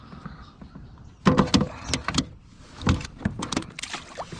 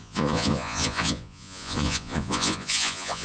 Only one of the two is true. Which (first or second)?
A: first